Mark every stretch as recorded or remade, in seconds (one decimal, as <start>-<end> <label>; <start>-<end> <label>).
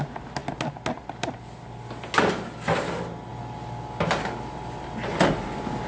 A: 0.0-5.9 recorded